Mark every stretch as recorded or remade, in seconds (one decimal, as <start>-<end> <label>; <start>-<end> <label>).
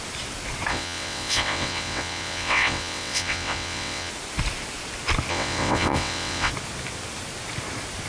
0.0-0.7 recorded; 0.7-4.1 remade; 4.1-5.3 recorded; 5.3-6.5 remade; 6.5-8.1 recorded